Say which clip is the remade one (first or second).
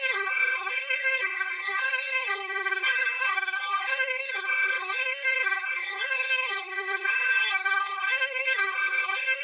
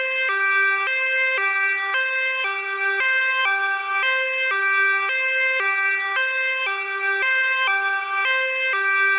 first